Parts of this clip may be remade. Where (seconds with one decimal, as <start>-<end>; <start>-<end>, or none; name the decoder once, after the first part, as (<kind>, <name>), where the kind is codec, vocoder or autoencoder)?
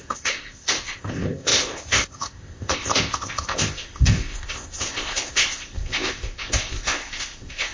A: 0.0-7.7 (codec, ZipCodec)